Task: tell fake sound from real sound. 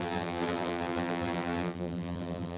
fake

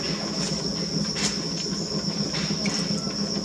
real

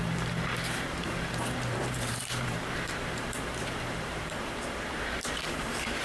fake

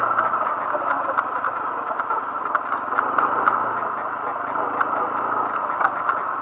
fake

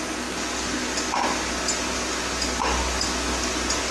real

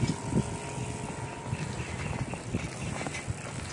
real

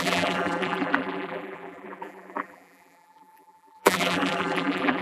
fake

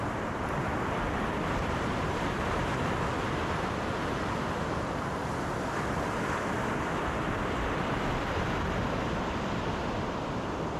real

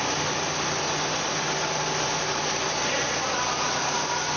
fake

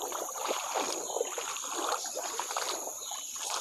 fake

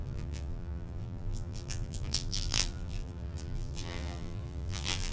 fake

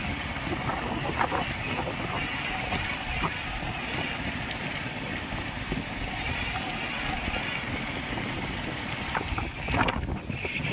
real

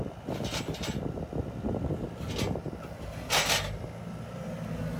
real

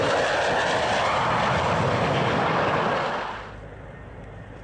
real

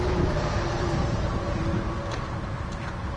fake